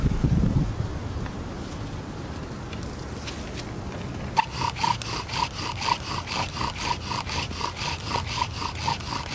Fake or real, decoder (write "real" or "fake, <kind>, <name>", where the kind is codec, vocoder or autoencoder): real